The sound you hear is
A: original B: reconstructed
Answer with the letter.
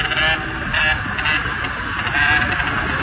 A